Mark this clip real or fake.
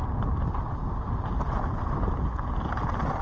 real